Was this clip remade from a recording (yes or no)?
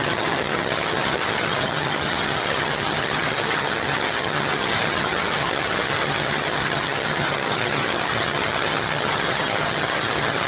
yes